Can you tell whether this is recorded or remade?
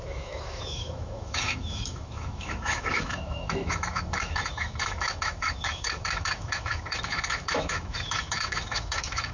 remade